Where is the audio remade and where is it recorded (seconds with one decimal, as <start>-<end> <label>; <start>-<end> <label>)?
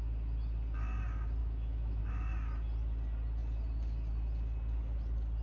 0.0-1.4 recorded; 1.4-2.0 remade; 2.0-5.4 recorded